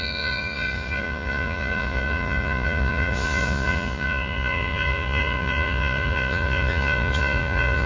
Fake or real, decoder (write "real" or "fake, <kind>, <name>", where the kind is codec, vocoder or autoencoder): fake, vocoder, Vocos